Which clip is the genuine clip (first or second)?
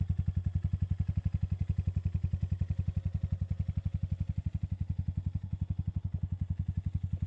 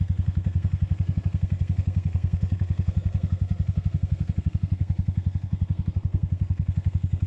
first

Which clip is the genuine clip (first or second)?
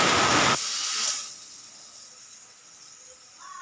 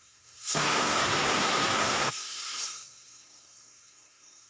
first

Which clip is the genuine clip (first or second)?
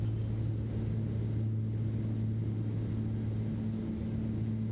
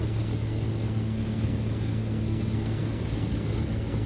first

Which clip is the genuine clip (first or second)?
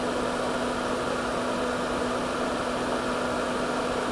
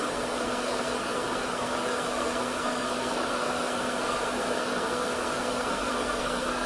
first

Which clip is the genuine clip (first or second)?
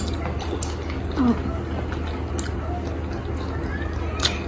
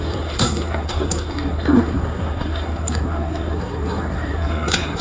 first